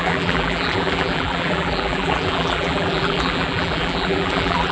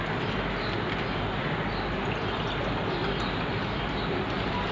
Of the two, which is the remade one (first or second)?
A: first